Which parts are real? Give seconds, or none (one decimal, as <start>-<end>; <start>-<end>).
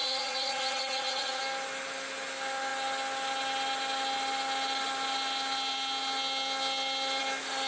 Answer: 1.4-7.7